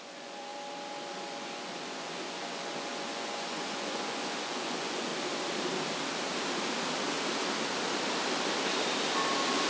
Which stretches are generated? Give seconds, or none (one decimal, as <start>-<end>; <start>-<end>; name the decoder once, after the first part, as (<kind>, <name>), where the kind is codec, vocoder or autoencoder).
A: 0.0-0.5 (vocoder, Vocos); 1.1-5.1